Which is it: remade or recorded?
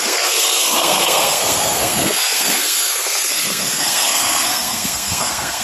remade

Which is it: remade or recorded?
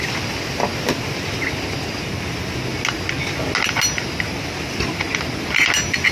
recorded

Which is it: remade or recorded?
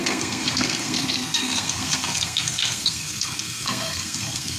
remade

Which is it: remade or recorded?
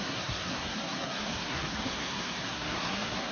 remade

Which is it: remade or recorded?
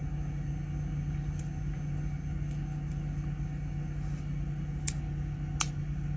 recorded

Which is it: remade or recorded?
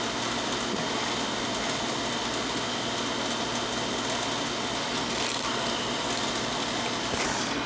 recorded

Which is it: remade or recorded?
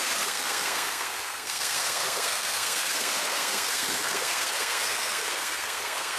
remade